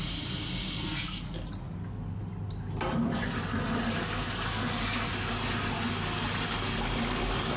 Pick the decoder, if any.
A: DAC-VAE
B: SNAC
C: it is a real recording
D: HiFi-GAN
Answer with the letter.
C